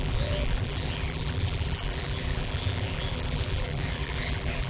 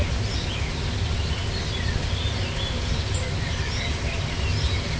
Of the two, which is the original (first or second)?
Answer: second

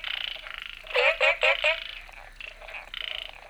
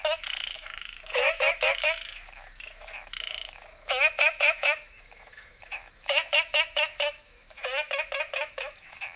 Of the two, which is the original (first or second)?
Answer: first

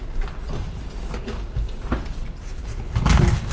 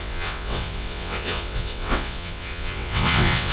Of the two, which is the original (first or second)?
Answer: first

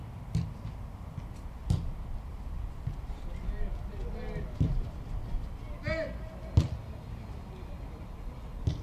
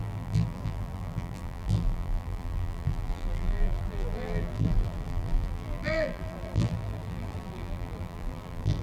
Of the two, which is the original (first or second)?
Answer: first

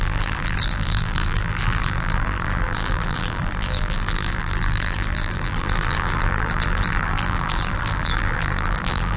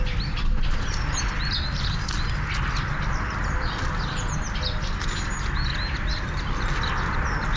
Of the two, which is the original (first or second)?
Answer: second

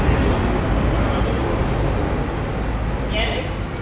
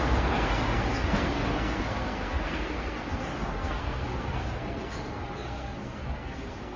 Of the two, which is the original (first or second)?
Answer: first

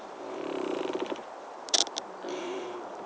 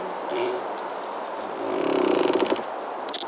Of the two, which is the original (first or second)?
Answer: second